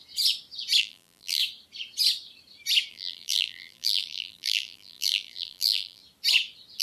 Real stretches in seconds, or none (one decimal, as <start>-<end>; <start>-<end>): 0.0-0.8; 1.4-2.9; 6.0-6.8